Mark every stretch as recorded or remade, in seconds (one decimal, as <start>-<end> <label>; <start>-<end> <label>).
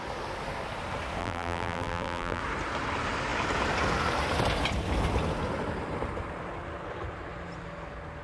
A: 0.0-1.2 recorded; 1.2-2.4 remade; 2.4-8.2 recorded